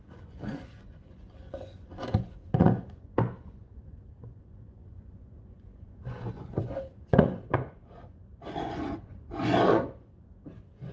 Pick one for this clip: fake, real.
fake